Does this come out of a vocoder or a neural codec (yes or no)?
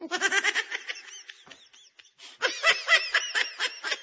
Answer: no